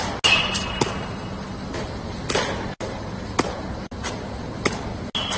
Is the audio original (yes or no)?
yes